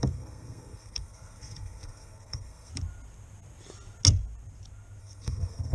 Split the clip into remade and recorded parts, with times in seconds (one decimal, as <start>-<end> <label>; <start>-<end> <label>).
0.0-2.7 remade; 2.7-5.0 recorded; 5.0-5.7 remade